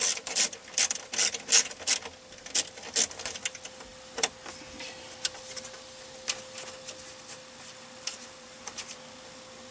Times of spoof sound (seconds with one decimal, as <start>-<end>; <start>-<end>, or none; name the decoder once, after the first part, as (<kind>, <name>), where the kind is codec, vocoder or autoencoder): 8.1-9.0 (vocoder, BigVGAN v2)